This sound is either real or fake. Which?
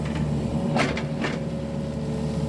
real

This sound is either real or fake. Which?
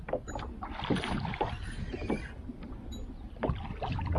real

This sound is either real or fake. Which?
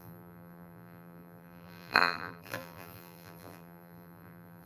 fake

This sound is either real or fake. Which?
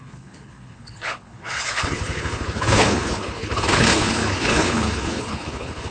fake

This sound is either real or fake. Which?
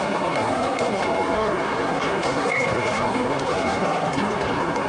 fake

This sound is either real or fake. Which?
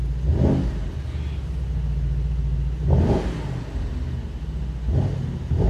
real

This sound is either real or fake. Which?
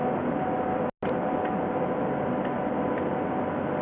real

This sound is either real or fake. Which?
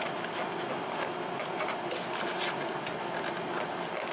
real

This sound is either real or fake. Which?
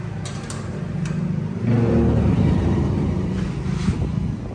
real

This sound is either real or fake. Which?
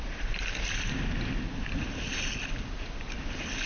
real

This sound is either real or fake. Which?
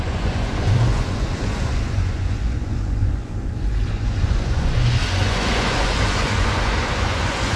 fake